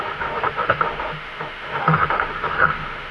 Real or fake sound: fake